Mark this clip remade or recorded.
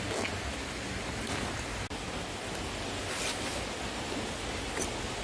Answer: recorded